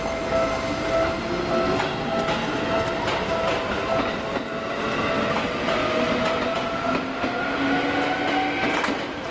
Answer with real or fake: real